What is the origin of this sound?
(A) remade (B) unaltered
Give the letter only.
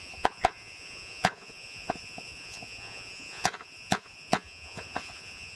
A